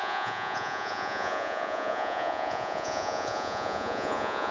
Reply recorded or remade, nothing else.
remade